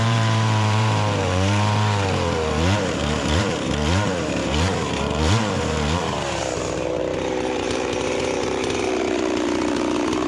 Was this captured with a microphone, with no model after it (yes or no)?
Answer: no